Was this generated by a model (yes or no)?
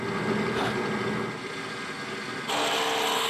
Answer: no